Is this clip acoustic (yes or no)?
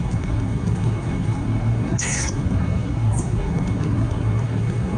no